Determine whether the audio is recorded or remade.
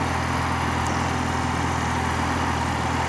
recorded